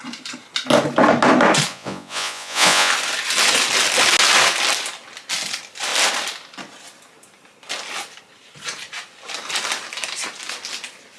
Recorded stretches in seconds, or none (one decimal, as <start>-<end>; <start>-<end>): 0.0-1.7; 2.9-11.2